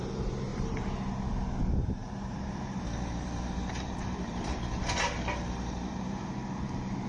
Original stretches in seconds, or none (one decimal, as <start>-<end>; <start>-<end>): 0.0-0.5; 1.1-2.0; 6.3-7.1